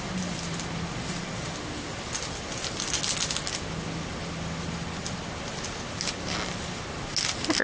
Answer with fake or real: real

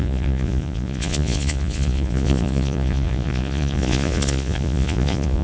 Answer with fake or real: fake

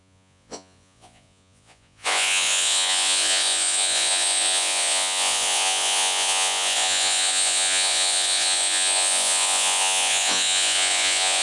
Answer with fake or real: fake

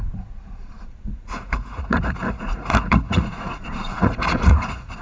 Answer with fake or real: fake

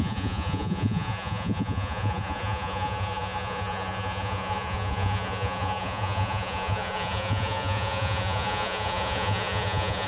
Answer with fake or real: fake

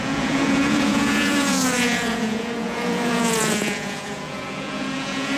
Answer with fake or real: fake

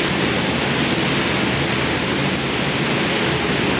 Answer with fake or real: real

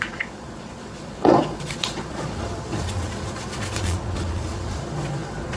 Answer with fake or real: fake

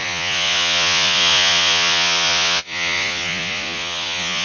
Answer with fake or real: fake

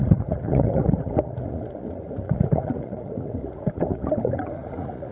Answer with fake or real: fake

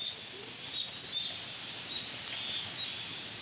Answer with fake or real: real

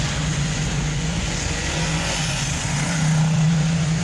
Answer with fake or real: fake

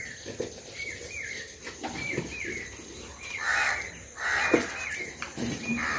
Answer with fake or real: real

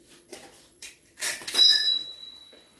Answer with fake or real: fake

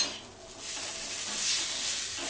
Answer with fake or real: real